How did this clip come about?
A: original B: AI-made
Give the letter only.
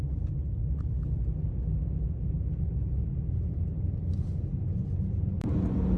A